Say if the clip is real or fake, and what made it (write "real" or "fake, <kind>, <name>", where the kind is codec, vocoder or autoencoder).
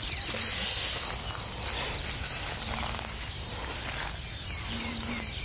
real